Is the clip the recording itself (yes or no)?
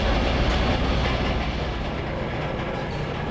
yes